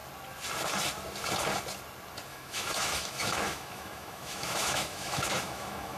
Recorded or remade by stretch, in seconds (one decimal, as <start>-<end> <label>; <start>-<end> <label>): 0.0-2.3 recorded; 2.3-6.0 remade